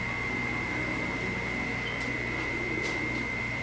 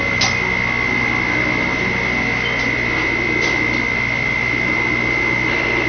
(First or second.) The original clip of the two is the second